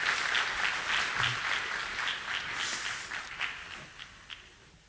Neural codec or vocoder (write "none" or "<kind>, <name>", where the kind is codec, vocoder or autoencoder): none